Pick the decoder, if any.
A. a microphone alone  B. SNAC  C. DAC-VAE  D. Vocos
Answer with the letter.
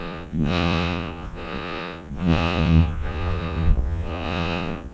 D